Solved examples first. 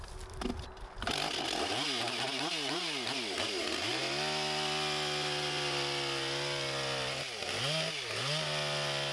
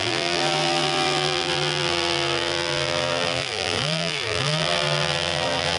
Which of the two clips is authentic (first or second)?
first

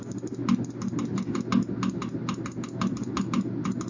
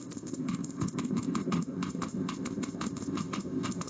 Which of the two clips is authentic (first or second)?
first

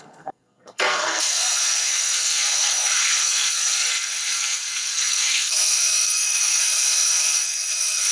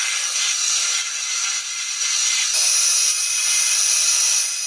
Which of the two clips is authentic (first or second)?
second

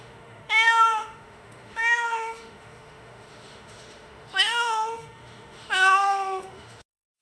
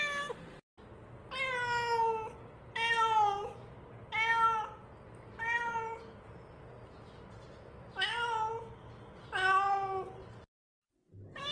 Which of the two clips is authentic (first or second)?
second